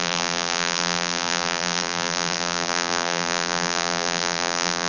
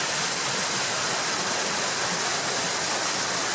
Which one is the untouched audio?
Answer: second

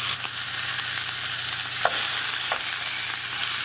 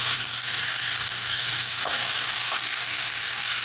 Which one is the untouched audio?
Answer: first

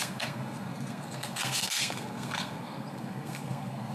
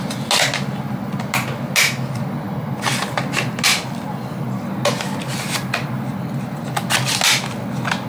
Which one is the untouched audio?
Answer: second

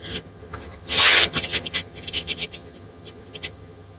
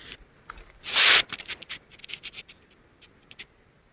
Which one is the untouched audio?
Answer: second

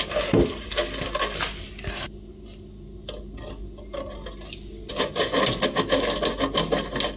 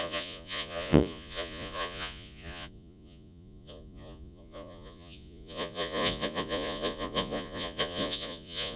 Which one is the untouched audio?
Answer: first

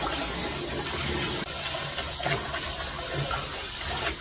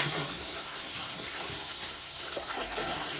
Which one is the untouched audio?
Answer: first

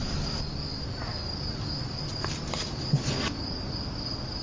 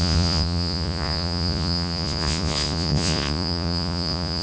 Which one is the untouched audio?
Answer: first